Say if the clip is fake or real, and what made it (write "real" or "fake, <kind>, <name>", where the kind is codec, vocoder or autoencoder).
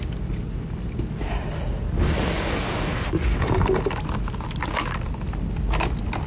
real